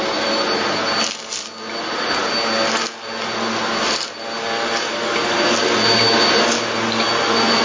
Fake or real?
real